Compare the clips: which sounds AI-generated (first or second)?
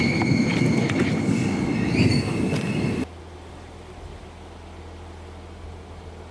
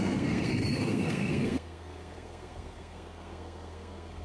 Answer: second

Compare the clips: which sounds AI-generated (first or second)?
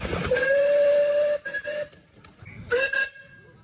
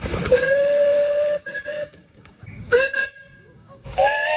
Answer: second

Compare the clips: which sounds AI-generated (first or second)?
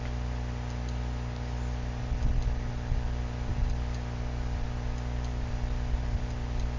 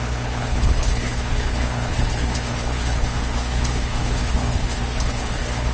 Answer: second